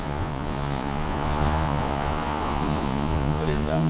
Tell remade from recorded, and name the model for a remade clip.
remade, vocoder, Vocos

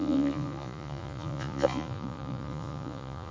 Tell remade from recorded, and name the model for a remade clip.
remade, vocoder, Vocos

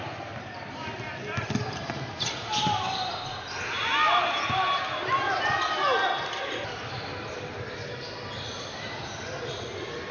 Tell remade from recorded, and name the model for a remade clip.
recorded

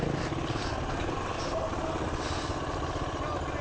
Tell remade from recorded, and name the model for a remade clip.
recorded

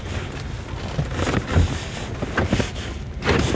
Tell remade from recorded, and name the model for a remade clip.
recorded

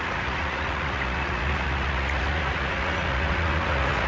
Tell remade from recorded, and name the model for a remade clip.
remade, vocoder, Vocos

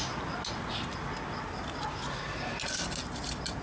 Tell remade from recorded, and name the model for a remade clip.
recorded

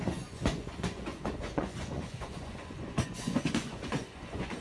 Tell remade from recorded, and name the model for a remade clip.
remade, vocoder, Vocos